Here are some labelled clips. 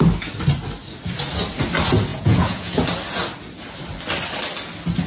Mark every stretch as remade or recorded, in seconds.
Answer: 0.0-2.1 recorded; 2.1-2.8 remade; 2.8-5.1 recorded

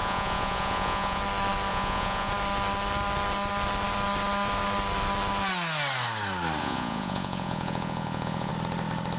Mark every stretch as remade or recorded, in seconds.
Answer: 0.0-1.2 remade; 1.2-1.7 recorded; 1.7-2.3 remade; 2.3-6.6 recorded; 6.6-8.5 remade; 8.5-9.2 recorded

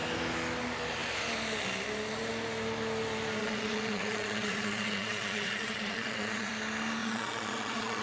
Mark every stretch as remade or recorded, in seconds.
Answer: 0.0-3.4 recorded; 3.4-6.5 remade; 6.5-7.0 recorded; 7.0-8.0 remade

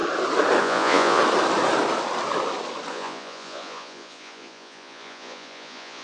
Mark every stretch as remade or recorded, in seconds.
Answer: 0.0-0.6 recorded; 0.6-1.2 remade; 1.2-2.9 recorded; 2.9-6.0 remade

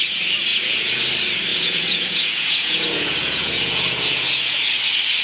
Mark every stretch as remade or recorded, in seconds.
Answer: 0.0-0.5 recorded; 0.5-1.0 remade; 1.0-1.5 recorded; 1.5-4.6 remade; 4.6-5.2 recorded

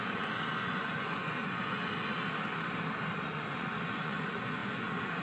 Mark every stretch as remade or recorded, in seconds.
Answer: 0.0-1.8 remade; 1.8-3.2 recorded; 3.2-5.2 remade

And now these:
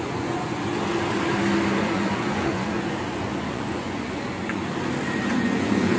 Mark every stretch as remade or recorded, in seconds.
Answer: 0.0-0.7 remade; 0.7-1.8 recorded; 1.8-4.6 remade; 4.6-5.3 recorded; 5.3-6.0 remade